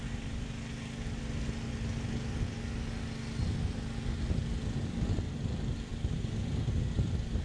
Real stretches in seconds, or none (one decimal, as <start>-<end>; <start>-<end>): 0.0-7.4